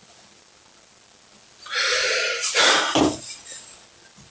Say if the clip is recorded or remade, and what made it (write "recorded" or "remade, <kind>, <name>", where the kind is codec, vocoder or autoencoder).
recorded